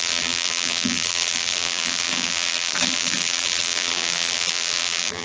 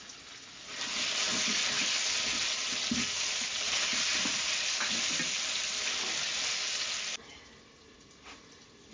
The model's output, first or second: first